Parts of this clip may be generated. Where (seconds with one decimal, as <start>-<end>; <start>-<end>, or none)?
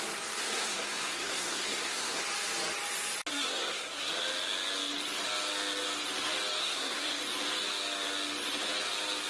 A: 0.4-2.2; 3.3-4.1; 6.6-7.2